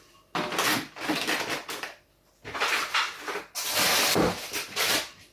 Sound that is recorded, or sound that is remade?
recorded